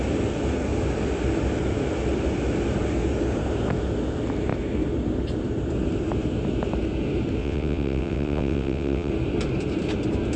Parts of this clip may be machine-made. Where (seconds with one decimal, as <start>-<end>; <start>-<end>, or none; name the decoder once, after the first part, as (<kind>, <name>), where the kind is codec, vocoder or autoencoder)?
7.4-9.1 (vocoder, WaveNeXt)